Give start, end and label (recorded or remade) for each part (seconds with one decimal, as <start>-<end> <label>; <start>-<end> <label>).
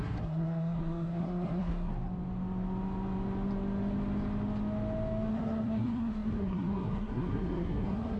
0.0-1.9 remade; 1.9-5.3 recorded; 5.3-8.2 remade